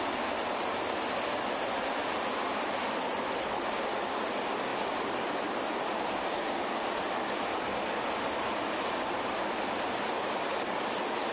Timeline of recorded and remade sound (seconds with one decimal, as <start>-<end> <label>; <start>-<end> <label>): 0.0-11.3 recorded